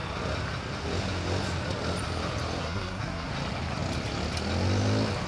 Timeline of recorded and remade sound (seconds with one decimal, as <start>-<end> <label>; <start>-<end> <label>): 0.0-2.6 recorded; 2.6-3.3 remade; 3.3-5.3 recorded